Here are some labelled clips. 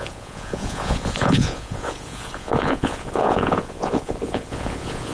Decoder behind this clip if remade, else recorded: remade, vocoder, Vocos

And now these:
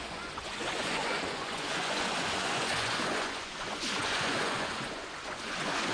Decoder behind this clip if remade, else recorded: remade, vocoder, Vocos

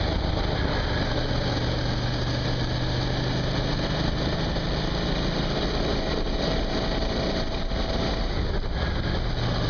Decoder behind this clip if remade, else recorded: recorded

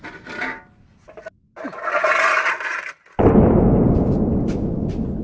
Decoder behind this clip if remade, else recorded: recorded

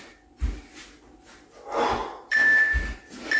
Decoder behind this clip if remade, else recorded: recorded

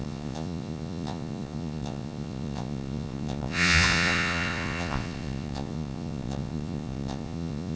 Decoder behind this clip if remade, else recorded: remade, vocoder, Vocos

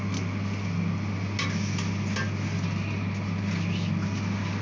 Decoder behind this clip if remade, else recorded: recorded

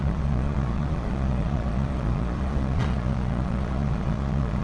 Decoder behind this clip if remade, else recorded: remade, vocoder, Vocos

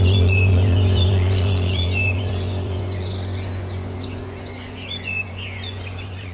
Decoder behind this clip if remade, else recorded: remade, vocoder, Vocos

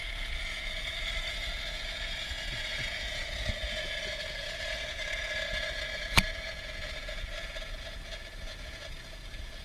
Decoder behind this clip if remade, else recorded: remade, vocoder, Vocos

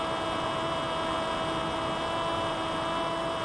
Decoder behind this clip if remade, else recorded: recorded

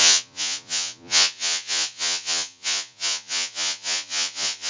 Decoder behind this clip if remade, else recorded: remade, vocoder, Vocos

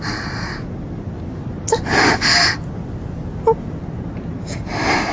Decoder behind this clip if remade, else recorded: recorded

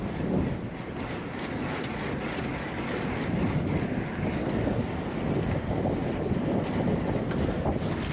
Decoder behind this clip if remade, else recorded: recorded